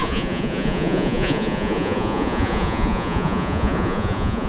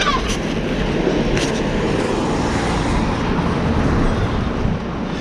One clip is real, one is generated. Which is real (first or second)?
second